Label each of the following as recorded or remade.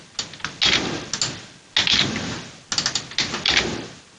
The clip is recorded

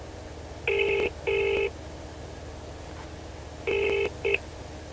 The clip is recorded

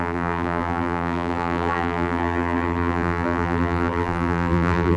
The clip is remade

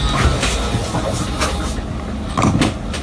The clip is recorded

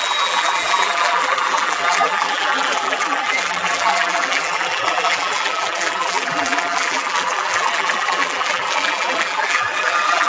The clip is remade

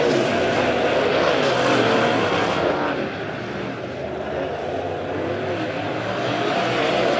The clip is recorded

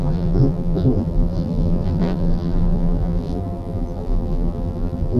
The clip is remade